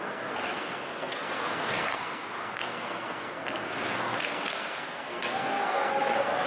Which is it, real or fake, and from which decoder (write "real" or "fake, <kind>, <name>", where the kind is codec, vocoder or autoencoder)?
fake, codec, SNAC